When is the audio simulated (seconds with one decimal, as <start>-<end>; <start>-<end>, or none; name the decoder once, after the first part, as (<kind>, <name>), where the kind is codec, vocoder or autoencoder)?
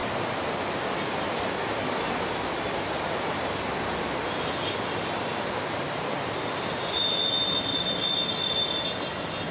none